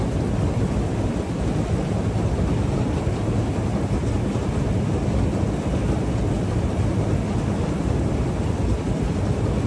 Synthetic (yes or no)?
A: no